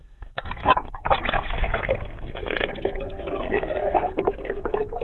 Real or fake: fake